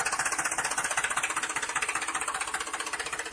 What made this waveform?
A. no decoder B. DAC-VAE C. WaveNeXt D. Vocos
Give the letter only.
A